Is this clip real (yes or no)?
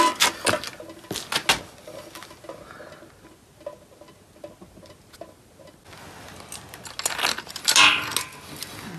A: yes